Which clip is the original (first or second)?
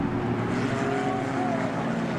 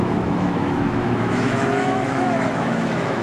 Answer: first